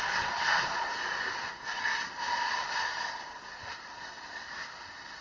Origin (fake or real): real